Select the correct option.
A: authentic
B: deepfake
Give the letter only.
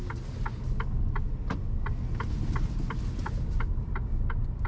A